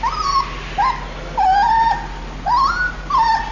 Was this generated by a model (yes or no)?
no